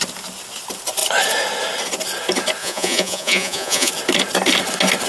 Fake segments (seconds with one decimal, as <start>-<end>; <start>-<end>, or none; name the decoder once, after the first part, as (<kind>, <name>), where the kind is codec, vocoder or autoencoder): 2.6-3.9 (vocoder, Vocos)